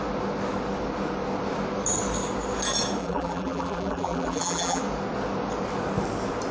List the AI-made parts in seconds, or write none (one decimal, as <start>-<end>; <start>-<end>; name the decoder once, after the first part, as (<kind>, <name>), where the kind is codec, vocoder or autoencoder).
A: 3.0-4.8 (vocoder, BigVGAN v2)